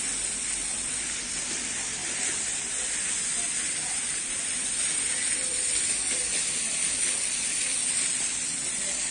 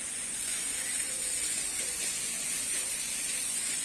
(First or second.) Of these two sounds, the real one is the first